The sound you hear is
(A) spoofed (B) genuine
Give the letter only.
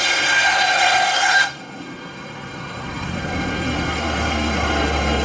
A